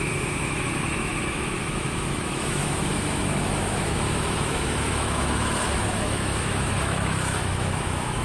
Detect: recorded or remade remade